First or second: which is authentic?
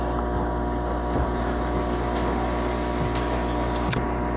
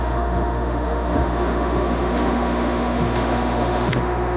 first